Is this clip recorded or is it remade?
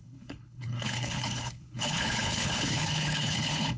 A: remade